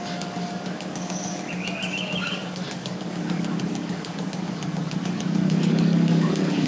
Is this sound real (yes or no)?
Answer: no